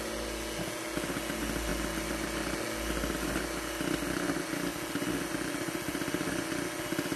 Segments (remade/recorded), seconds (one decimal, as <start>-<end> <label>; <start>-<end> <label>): 0.0-7.2 recorded